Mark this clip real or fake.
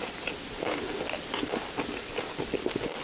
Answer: real